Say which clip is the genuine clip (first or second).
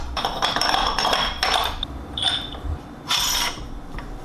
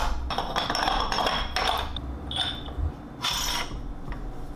second